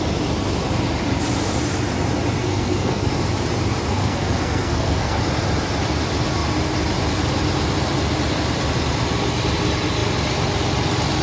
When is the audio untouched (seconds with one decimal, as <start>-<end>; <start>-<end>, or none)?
0.0-2.4; 3.1-3.9; 5.2-11.2